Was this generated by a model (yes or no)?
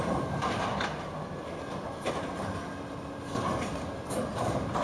no